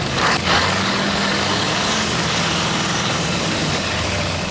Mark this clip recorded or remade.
remade